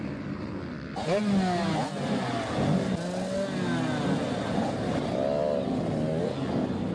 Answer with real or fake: real